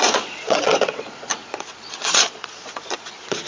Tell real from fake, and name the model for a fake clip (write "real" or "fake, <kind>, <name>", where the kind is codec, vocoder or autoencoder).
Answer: fake, vocoder, Vocos